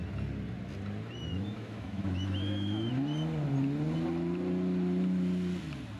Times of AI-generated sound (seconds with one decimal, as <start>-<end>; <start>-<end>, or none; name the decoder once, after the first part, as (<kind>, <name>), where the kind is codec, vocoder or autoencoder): 1.3-2.9 (autoencoder, DAC-VAE)